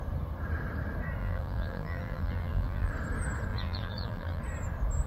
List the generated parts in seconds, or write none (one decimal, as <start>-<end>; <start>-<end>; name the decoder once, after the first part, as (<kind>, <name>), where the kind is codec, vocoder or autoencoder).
1.2-2.9 (vocoder, BigVGAN v2); 3.5-4.4